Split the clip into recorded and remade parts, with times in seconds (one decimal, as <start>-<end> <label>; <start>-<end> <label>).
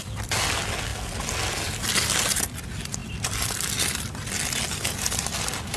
0.0-5.8 recorded